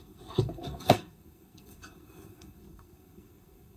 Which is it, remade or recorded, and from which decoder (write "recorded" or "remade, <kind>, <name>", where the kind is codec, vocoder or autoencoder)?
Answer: remade, codec, SNAC